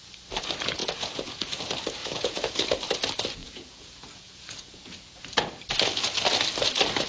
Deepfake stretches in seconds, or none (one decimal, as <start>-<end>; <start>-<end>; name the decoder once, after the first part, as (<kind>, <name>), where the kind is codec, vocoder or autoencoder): 0.8-1.6 (vocoder, Vocos); 2.0-2.7; 3.4-5.2